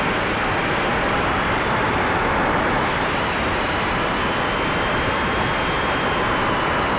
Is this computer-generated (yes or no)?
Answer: no